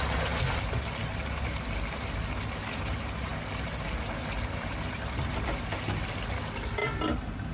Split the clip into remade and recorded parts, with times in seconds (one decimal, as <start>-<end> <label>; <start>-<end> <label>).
0.0-7.5 recorded